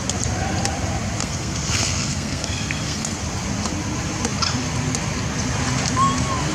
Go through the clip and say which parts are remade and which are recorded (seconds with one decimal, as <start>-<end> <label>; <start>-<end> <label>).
0.0-1.2 recorded; 1.2-3.2 remade; 3.2-6.5 recorded